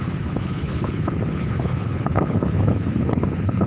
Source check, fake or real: fake